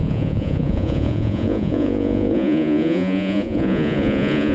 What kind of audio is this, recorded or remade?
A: remade